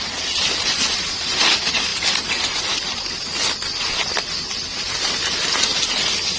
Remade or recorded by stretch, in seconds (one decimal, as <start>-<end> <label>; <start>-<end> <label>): 0.0-6.4 recorded